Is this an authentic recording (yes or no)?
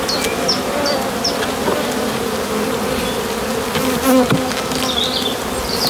yes